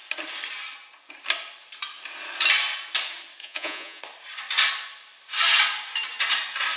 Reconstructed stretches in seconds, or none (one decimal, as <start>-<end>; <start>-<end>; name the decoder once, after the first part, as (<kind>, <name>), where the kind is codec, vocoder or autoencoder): 3.4-4.0 (vocoder, Vocos)